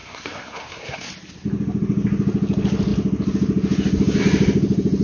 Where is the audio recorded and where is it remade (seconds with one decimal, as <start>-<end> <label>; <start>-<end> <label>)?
0.0-1.1 remade; 1.1-5.0 recorded